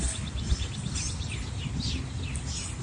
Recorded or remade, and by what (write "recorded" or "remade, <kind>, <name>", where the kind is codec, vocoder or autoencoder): recorded